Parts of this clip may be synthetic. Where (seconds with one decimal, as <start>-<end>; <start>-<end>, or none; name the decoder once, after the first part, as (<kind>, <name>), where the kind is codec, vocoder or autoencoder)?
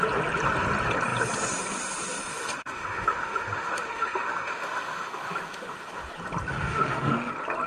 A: 2.3-6.1 (autoencoder, DAC-VAE); 6.5-7.3